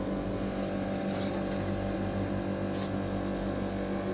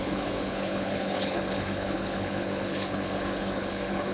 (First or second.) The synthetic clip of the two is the second